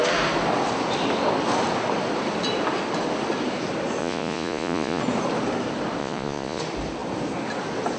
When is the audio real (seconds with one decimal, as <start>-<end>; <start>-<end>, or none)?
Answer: 0.0-4.0; 5.0-6.0; 6.6-8.0